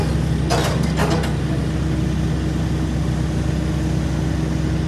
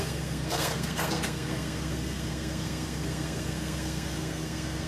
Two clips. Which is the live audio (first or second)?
first